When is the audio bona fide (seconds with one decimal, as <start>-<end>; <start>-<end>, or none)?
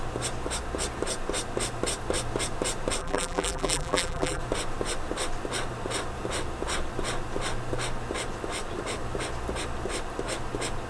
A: 0.0-3.0; 4.4-10.9